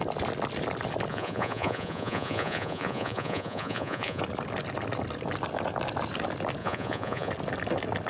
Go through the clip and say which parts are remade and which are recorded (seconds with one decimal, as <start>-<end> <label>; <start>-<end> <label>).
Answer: 0.0-1.1 recorded; 1.1-4.2 remade; 4.2-6.6 recorded; 6.6-7.3 remade; 7.3-8.1 recorded